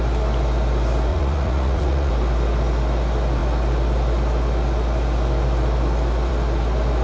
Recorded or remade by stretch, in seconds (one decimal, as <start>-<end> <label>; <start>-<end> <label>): 0.0-1.1 recorded; 1.1-2.1 remade; 2.1-7.0 recorded